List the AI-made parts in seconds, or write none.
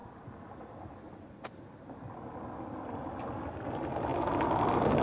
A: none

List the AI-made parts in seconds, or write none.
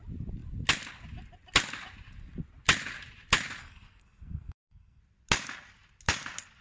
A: 3.6-5.0 (codec, SNAC)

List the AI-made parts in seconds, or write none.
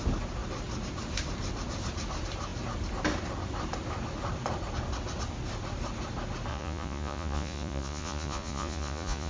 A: 6.5-9.3 (vocoder, Vocos)